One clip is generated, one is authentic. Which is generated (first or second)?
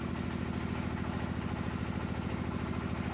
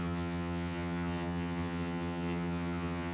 second